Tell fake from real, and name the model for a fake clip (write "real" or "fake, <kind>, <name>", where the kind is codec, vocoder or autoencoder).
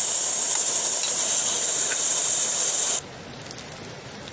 fake, vocoder, BigVGAN v2